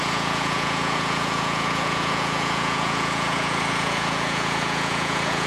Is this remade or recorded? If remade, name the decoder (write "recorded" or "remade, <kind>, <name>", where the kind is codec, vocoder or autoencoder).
remade, vocoder, Vocos